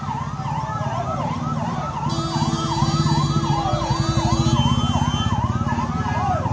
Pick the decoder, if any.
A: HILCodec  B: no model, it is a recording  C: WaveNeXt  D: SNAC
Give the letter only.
B